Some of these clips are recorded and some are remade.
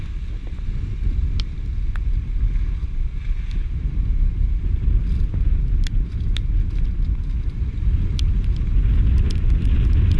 recorded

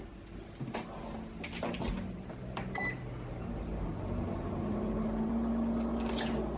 recorded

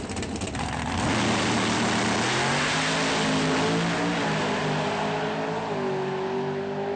recorded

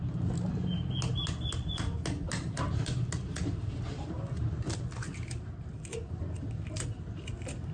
recorded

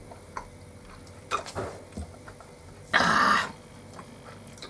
recorded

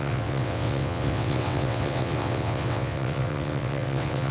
remade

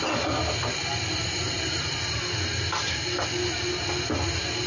recorded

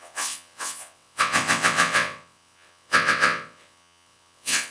remade